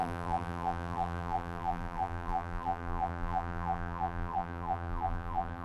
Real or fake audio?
fake